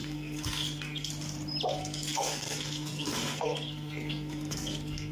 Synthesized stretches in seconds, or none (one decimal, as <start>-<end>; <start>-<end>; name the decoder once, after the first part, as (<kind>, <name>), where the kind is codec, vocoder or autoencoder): 0.0-1.1 (codec, SNAC); 1.7-5.1

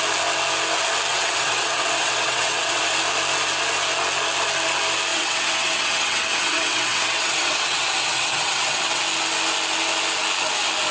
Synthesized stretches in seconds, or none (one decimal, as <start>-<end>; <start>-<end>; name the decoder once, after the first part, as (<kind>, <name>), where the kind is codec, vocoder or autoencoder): 1.1-2.8 (vocoder, WaveNeXt); 5.1-9.0

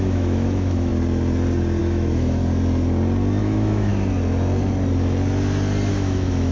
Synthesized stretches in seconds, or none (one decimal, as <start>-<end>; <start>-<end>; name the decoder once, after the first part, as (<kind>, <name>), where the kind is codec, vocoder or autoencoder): 0.0-0.9 (autoencoder, DAC-VAE); 1.8-2.4; 3.4-3.9; 5.9-6.5

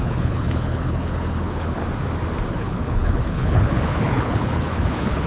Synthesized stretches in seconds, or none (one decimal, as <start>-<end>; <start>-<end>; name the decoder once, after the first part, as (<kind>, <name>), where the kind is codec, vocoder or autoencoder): 0.0-1.8 (codec, HILCodec); 2.5-5.3

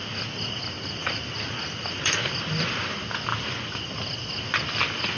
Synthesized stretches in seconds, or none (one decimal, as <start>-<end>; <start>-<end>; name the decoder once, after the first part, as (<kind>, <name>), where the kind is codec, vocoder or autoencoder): none

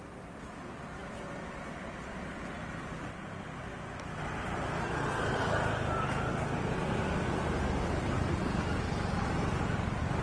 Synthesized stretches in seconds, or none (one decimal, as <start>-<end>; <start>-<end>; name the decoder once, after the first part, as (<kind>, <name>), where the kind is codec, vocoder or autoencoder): none

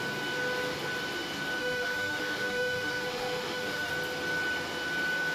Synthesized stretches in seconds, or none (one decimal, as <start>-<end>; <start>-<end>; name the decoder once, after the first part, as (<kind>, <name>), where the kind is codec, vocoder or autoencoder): 1.6-3.9 (autoencoder, DAC-VAE)

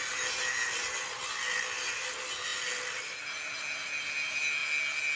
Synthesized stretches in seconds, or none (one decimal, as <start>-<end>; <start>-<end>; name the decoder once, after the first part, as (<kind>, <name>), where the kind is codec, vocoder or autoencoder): none